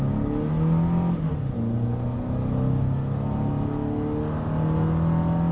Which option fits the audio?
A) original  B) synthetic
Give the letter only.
A